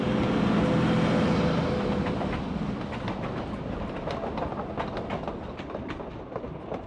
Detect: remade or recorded recorded